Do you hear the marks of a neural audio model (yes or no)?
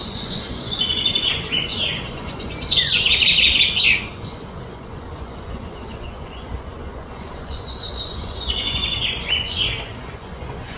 yes